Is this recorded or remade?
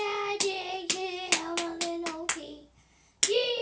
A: recorded